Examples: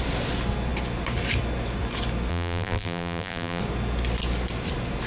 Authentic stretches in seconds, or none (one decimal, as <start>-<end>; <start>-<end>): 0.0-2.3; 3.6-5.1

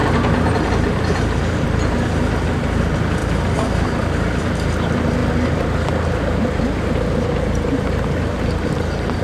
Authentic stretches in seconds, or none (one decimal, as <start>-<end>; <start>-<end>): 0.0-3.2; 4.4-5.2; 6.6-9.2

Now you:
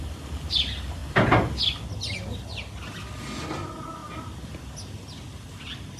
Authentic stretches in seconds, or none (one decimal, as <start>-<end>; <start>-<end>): 0.0-6.0

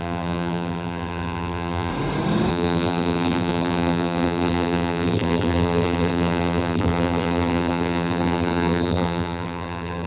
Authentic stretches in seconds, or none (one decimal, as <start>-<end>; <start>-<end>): 1.9-2.5